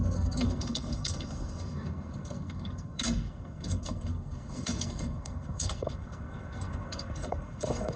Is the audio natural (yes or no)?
no